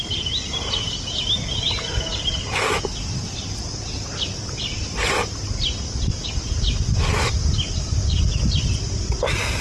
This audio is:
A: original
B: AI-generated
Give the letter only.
A